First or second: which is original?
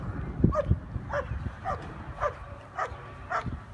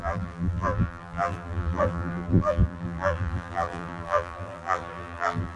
first